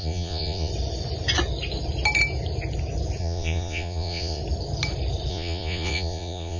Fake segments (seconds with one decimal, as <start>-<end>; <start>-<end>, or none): 0.0-0.7; 3.2-4.4; 5.3-6.6